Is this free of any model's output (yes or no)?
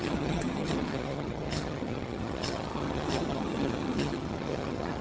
no